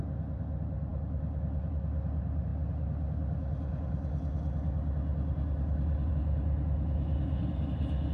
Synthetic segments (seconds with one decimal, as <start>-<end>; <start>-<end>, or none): none